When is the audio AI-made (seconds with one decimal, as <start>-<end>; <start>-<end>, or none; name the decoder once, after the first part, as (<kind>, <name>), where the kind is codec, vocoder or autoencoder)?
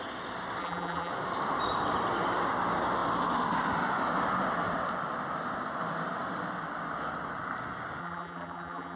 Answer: 0.6-1.1 (vocoder, BigVGAN v2); 8.0-9.0